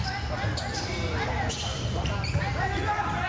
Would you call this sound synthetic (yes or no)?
no